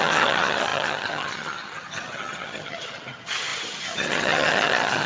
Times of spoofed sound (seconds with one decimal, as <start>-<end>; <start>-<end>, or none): 0.0-5.1